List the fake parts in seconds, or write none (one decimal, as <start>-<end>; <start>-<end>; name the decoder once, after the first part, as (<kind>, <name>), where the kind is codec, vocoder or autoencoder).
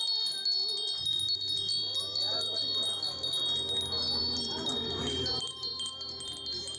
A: 4.2-6.2 (vocoder, BigVGAN v2)